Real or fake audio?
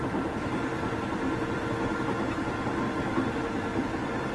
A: real